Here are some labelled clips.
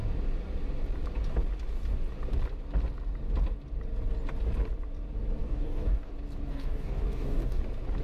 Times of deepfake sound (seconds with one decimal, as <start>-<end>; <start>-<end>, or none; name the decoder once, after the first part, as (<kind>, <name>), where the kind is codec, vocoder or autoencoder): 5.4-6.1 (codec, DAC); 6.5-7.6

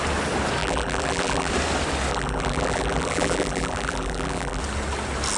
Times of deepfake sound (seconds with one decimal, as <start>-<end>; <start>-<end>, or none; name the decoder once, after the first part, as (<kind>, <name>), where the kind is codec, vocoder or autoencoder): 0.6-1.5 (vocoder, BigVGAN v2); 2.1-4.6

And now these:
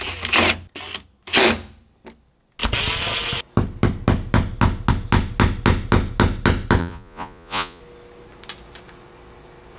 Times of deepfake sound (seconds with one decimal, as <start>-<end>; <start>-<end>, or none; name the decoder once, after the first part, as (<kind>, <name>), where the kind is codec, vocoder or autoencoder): 6.8-7.8 (vocoder, Vocos)